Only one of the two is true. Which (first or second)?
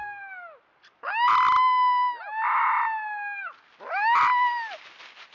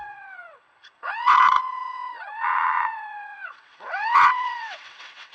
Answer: first